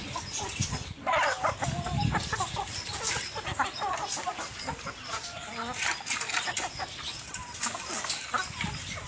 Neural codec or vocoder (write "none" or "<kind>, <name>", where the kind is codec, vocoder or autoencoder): none